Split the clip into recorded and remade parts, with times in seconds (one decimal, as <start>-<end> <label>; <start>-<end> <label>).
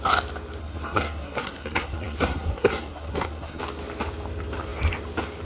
0.0-0.6 recorded; 0.6-3.6 remade; 3.6-5.4 recorded